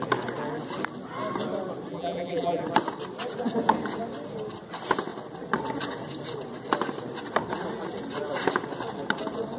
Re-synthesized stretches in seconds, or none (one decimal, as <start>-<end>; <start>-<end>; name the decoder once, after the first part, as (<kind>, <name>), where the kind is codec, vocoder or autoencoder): 1.9-2.6 (vocoder, BigVGAN v2)